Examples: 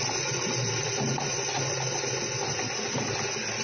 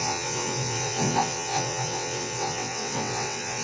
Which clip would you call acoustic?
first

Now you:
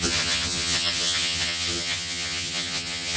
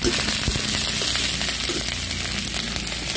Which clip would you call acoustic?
second